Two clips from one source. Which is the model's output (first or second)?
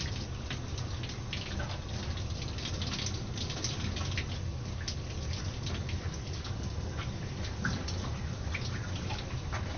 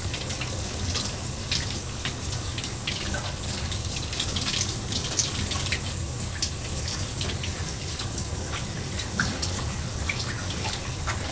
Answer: second